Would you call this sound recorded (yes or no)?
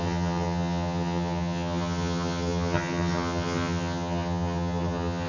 no